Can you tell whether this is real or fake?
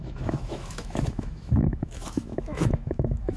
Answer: fake